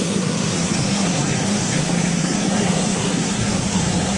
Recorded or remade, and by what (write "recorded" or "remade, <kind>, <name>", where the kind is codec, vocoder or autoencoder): remade, codec, SNAC